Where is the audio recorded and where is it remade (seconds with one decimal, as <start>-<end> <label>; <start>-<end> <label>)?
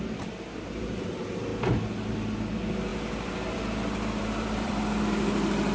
0.0-1.5 remade; 1.5-2.1 recorded; 2.1-5.7 remade